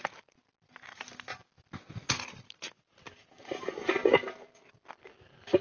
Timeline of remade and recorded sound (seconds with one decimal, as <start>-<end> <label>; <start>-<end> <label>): 0.0-5.6 recorded